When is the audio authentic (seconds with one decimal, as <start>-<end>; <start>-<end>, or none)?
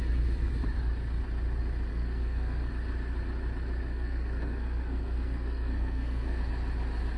0.0-1.9; 2.7-3.9; 6.4-7.2